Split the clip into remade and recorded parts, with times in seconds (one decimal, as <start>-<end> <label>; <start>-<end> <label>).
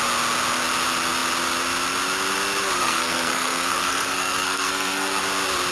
0.0-2.8 recorded; 2.8-5.2 remade; 5.2-5.7 recorded